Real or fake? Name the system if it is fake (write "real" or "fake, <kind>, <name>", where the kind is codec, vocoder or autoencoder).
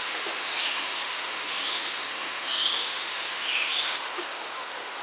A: fake, autoencoder, DAC-VAE